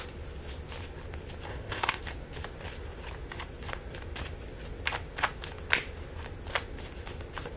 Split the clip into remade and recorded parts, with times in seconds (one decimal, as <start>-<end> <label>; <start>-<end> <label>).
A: 0.0-1.5 recorded; 1.5-2.0 remade; 2.0-7.6 recorded